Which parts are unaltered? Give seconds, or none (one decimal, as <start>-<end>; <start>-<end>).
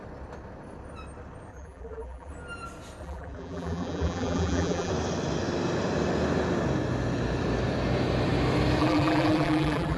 0.0-1.5; 2.3-3.0; 4.9-8.8